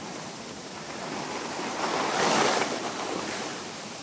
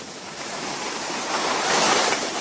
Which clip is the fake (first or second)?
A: second